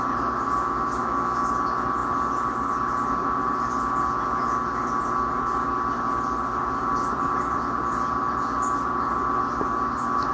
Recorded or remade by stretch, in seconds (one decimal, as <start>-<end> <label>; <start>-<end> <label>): 0.0-1.0 recorded; 1.0-1.5 remade; 1.5-10.3 recorded